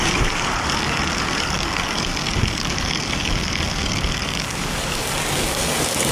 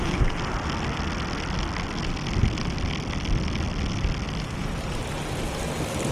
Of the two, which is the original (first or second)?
second